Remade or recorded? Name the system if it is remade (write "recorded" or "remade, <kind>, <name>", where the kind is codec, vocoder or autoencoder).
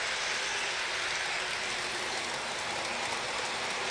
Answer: recorded